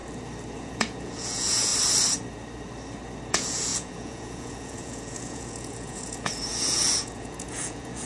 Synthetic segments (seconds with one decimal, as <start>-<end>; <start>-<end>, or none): 0.6-1.7; 3.3-8.1